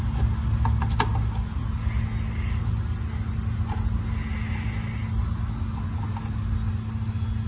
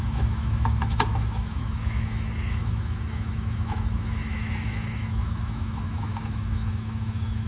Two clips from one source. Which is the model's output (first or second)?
second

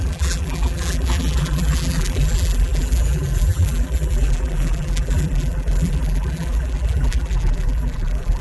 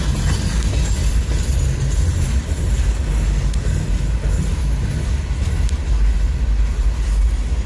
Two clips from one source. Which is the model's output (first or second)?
first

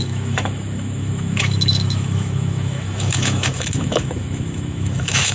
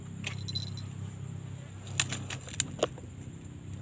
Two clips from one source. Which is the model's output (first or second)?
first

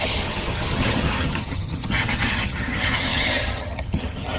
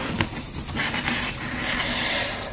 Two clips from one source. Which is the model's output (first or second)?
first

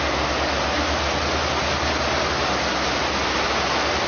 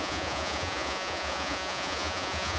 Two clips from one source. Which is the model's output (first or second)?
second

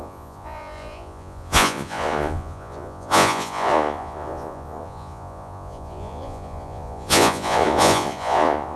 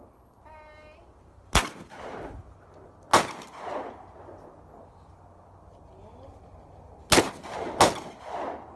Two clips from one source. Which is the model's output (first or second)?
first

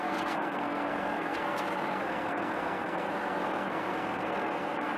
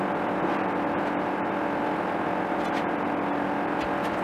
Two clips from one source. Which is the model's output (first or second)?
first